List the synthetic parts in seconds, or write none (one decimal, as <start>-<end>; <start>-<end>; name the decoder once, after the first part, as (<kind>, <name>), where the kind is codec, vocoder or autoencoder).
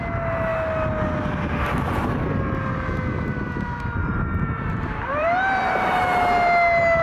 4.0-6.0 (vocoder, BigVGAN v2)